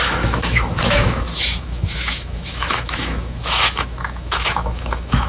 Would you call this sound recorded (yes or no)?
no